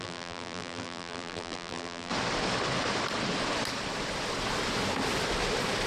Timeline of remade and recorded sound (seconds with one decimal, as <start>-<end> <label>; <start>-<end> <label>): 0.0-2.1 remade; 2.1-5.9 recorded